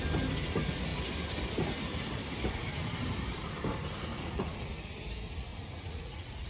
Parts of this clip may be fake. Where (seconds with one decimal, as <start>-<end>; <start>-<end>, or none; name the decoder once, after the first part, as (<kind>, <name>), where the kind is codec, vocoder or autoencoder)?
4.1-4.7 (vocoder, Vocos); 5.5-6.5